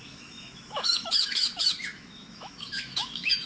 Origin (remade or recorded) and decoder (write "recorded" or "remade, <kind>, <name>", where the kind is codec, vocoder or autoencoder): remade, autoencoder, DAC-VAE